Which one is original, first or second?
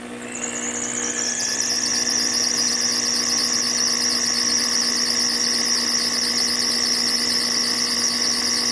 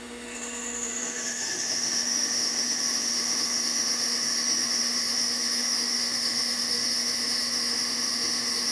first